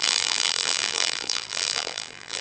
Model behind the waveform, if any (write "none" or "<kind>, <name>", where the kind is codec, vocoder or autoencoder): vocoder, BigVGAN v2